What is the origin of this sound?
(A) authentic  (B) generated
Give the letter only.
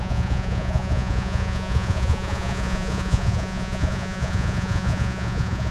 B